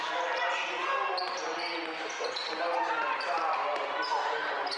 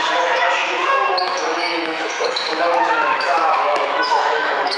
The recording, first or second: first